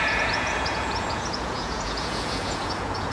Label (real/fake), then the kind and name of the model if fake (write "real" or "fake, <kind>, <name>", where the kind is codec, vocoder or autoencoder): fake, vocoder, Vocos